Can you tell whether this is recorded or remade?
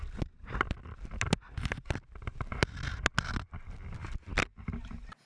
recorded